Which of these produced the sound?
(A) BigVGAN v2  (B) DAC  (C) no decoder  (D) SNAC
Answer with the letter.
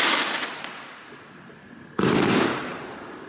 A